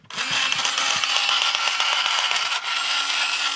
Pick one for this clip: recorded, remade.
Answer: recorded